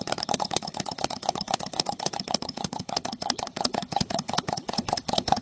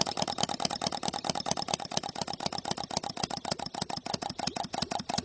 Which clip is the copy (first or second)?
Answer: first